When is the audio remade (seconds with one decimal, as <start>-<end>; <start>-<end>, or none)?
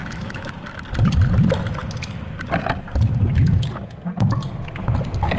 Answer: 0.0-0.5